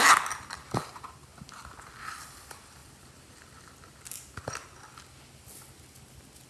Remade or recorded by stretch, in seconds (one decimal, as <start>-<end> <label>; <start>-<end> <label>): 0.0-6.5 recorded

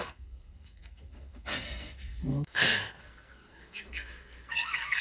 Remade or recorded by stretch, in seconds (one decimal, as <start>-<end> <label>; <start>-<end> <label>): 0.0-5.0 remade

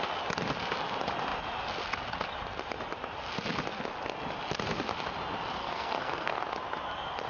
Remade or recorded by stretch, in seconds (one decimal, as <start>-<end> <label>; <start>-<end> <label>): 0.0-5.6 recorded; 5.6-6.4 remade; 6.4-7.3 recorded